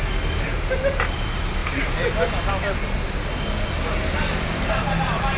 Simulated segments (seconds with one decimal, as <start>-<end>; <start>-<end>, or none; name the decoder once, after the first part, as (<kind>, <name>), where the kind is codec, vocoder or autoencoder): none